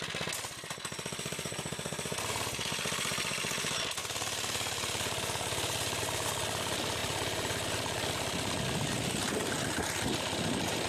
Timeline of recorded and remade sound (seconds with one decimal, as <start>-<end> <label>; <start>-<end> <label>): 0.0-10.9 recorded